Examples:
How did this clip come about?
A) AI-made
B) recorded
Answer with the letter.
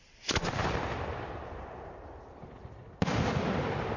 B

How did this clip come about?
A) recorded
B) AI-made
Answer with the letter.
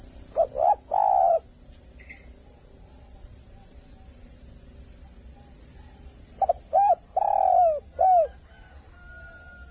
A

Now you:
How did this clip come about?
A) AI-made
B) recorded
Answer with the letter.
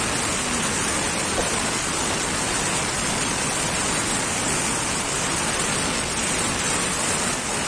B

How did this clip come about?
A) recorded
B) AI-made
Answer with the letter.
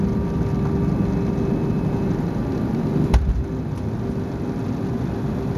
A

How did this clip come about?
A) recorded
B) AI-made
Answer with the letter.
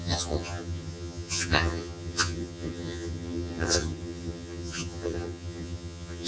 B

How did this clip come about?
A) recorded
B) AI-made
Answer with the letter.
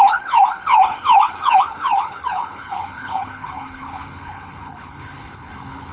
B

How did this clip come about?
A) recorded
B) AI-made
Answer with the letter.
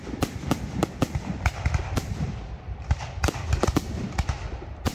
B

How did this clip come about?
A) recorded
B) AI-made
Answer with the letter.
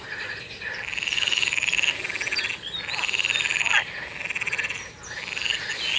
A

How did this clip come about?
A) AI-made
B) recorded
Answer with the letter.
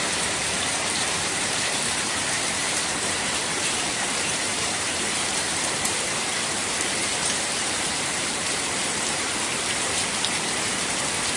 A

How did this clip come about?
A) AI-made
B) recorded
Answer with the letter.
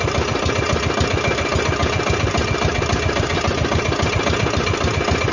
B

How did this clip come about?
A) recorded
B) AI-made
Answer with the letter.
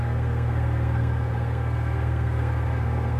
B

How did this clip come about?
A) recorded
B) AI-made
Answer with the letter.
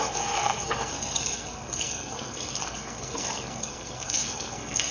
B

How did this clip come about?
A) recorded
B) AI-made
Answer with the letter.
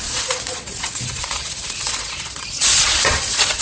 B